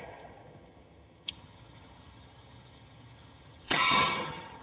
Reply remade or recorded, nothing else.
remade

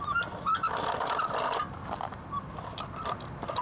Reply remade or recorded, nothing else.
recorded